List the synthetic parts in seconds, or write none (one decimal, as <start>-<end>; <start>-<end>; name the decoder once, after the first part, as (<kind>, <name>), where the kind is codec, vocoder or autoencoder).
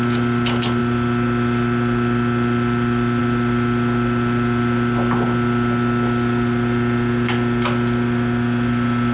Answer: none